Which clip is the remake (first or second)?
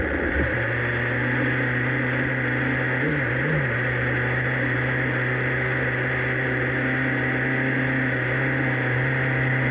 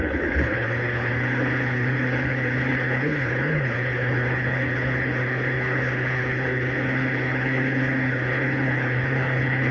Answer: second